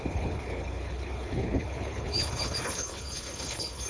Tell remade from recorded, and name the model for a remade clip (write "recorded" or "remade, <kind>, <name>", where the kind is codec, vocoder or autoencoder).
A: remade, codec, HILCodec